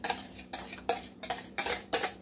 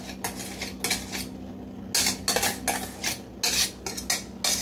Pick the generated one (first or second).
first